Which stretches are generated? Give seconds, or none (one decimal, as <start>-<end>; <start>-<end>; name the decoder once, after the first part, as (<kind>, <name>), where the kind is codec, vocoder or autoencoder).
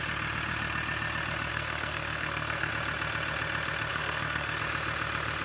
1.5-2.7 (codec, SNAC); 3.9-4.6